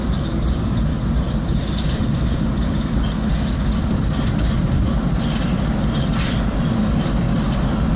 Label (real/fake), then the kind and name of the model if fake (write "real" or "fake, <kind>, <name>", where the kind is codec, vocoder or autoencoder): real